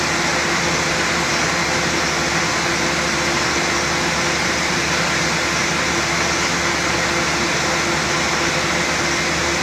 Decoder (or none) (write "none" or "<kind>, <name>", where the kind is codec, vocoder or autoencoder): none